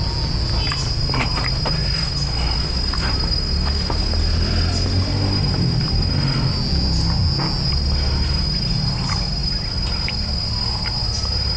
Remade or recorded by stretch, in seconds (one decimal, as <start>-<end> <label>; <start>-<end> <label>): 0.0-11.6 recorded